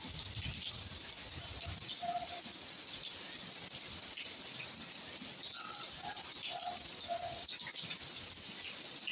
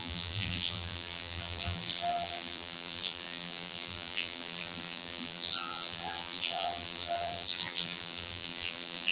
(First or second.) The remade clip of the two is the second